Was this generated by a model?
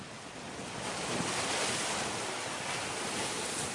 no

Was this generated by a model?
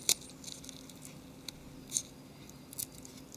no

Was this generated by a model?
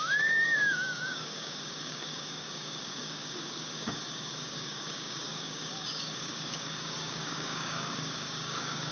yes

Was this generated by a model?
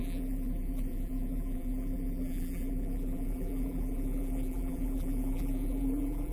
yes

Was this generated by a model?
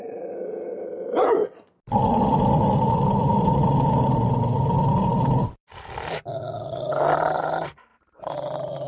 no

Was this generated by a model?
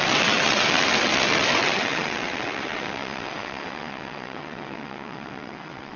yes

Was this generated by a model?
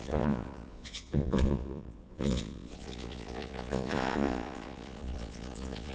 yes